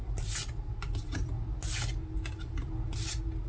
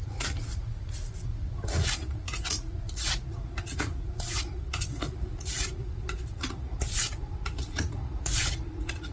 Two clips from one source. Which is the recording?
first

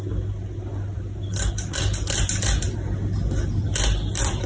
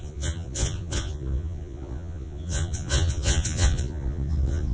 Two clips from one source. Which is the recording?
first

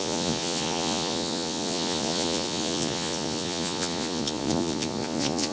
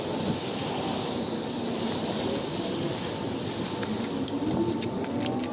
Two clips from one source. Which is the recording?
second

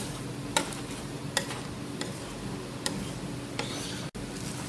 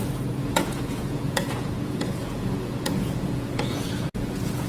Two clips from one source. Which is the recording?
first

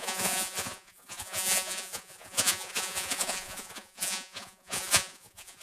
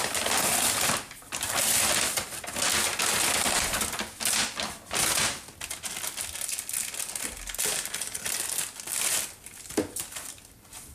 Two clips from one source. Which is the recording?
second